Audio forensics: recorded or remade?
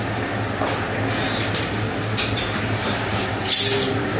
recorded